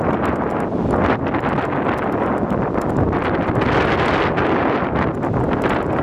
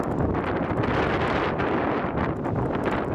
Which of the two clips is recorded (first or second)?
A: first